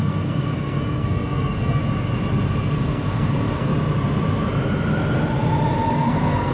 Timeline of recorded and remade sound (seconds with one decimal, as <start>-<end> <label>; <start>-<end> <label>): 0.0-1.8 remade; 1.8-2.6 recorded; 2.6-3.7 remade; 3.7-5.9 recorded; 5.9-6.5 remade